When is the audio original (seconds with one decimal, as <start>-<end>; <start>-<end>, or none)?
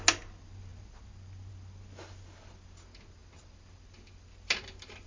0.0-5.1